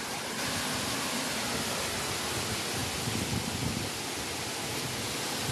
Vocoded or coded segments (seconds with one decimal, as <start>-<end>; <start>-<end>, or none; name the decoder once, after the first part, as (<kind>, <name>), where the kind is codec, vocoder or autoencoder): none